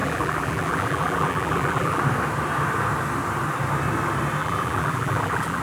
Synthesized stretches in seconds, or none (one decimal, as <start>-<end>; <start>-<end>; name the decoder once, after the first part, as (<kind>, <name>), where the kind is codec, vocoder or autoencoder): 0.0-2.0 (vocoder, BigVGAN v2); 4.4-5.6